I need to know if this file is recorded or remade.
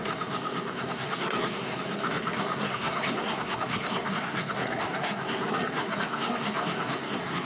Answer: remade